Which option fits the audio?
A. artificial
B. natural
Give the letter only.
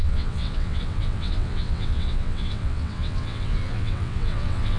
A